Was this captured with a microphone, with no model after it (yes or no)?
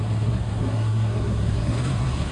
no